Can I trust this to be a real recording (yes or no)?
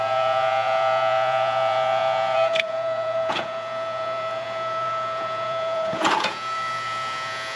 no